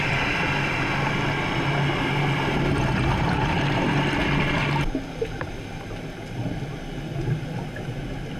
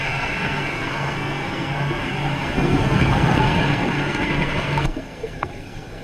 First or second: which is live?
first